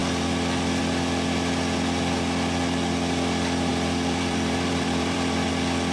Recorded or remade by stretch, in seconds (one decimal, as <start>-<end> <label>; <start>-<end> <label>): 0.0-3.7 recorded; 3.7-5.5 remade; 5.5-5.9 recorded